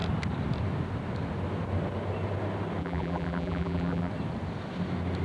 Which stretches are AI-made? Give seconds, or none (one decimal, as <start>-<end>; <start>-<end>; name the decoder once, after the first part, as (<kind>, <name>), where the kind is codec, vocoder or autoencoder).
2.8-4.1 (vocoder, BigVGAN v2)